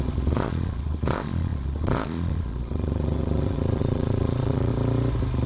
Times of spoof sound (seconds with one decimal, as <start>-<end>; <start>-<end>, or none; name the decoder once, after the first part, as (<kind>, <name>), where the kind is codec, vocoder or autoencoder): 0.0-4.7 (vocoder, Vocos)